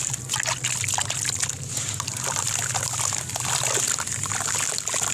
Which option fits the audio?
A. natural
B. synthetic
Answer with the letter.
A